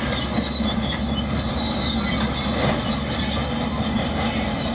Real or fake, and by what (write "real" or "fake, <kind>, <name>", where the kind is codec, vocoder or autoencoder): real